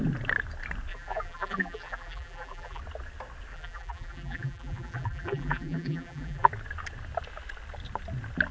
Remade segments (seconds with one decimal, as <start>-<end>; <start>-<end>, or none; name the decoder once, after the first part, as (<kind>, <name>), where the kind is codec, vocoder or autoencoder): 0.9-2.8 (vocoder, BigVGAN v2); 3.5-6.5